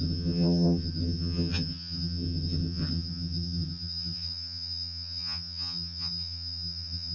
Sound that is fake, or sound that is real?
fake